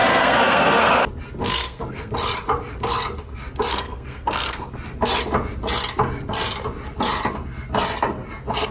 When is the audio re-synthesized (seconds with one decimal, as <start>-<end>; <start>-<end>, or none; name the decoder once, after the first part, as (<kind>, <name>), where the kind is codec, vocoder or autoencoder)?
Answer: 0.0-1.0 (codec, SNAC); 1.4-2.1; 3.7-4.7